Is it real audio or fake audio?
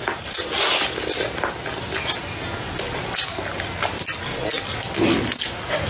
real